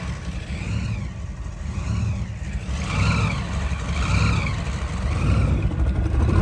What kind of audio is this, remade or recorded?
recorded